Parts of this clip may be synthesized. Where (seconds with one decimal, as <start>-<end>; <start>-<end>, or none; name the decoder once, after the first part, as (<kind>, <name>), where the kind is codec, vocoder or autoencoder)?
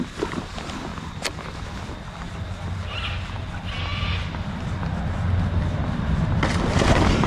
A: none